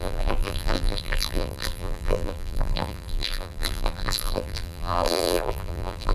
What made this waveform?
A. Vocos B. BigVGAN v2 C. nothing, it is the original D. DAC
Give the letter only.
B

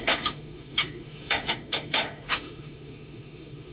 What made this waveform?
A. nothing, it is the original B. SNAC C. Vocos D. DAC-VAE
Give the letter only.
D